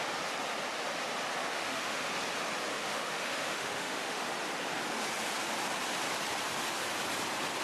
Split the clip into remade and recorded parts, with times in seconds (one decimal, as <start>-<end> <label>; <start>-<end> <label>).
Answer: 0.0-1.5 recorded; 1.5-2.1 remade; 2.1-2.7 recorded; 2.7-4.3 remade; 4.3-7.6 recorded